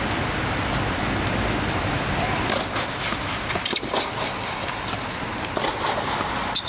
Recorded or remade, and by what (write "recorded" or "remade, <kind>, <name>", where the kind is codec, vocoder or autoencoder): recorded